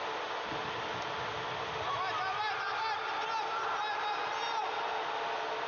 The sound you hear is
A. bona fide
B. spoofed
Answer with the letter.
A